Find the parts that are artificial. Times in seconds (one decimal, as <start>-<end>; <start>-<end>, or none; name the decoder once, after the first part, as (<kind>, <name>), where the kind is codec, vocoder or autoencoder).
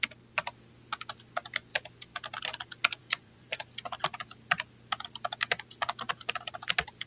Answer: 3.0-3.6 (vocoder, Vocos)